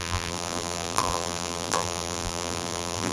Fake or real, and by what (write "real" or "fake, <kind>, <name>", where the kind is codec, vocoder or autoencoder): fake, vocoder, BigVGAN v2